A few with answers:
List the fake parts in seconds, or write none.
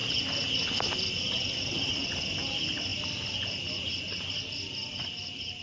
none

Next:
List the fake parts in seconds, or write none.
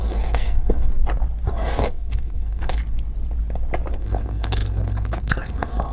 0.0-0.9 (codec, SNAC); 1.5-2.8; 3.9-5.9